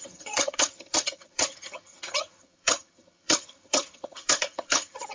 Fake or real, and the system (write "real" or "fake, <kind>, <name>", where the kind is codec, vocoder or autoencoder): fake, vocoder, HiFi-GAN